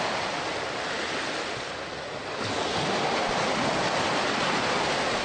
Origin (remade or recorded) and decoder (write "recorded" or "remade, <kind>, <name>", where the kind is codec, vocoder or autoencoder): recorded